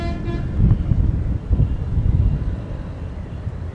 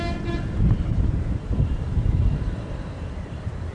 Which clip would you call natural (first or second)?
first